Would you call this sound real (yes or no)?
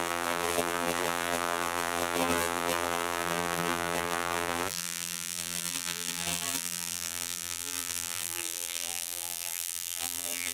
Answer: no